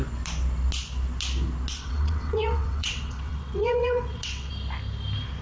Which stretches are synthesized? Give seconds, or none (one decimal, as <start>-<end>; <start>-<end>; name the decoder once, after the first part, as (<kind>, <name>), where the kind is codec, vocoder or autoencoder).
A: 1.7-4.5 (vocoder, WaveNeXt)